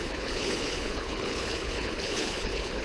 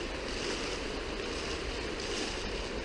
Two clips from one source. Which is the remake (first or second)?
first